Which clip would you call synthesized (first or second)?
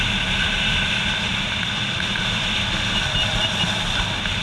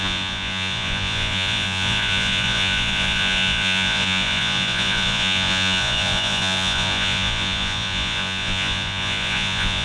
second